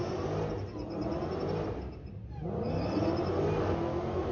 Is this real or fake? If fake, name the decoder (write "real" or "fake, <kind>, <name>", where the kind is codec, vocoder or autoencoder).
real